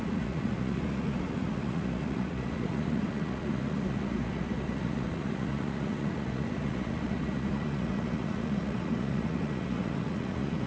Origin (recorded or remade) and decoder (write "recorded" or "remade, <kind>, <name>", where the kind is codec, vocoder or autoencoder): remade, vocoder, Vocos